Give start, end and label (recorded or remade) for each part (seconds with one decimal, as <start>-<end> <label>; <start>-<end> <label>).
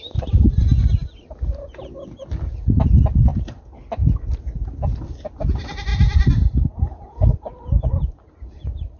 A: 0.0-3.3 recorded; 3.3-3.8 remade; 3.8-5.9 recorded; 5.9-9.0 remade